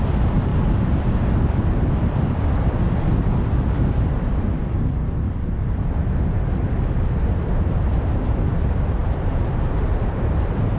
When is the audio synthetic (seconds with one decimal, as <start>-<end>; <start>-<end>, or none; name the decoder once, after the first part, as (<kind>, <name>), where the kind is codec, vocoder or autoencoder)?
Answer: 0.0-4.6 (vocoder, BigVGAN v2); 6.3-10.8